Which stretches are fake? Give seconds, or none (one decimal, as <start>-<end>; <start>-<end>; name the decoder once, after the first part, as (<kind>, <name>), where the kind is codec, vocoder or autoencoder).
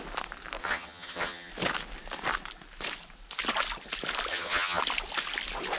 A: 0.6-1.5 (vocoder, HiFi-GAN); 4.3-4.8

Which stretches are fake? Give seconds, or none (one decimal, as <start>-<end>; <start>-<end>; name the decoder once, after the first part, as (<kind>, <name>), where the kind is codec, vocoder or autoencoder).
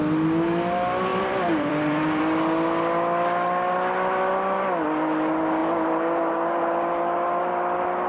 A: 1.1-2.2 (vocoder, BigVGAN v2)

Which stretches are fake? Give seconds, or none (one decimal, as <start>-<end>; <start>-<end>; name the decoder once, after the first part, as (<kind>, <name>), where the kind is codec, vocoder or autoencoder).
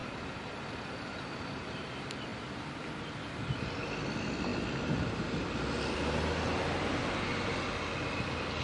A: none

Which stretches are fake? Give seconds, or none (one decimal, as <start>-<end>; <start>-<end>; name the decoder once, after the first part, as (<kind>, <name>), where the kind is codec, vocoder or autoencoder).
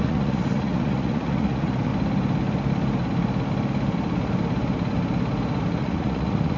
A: 0.0-1.9 (vocoder, Vocos); 5.8-6.6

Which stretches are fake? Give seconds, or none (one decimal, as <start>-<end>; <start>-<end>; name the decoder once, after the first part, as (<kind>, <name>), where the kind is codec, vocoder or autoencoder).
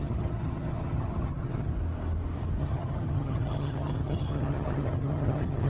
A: 0.0-1.7 (vocoder, HiFi-GAN); 2.6-5.7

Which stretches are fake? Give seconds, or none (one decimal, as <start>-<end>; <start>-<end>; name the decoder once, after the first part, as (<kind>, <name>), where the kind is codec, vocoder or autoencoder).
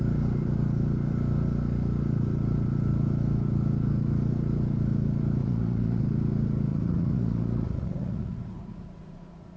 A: 5.4-6.0 (vocoder, Vocos); 6.7-9.6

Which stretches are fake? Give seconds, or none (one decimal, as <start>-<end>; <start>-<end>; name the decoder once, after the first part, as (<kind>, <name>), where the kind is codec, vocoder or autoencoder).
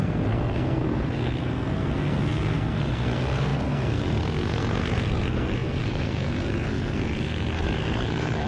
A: 0.0-8.5 (codec, SNAC)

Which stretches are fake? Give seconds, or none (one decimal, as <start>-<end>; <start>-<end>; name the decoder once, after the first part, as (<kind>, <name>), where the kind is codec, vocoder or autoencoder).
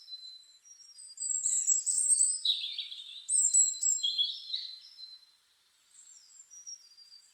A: 0.0-7.3 (vocoder, BigVGAN v2)